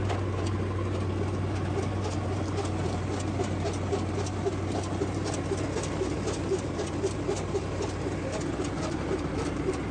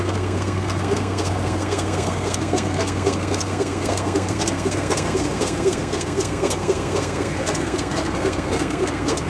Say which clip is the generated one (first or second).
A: second